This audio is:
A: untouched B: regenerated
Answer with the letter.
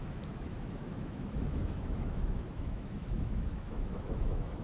B